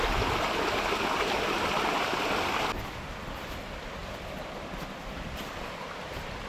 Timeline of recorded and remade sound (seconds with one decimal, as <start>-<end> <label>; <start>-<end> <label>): 0.0-4.0 recorded; 4.0-5.5 remade; 5.5-6.5 recorded